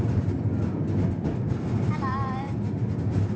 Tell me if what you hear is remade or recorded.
remade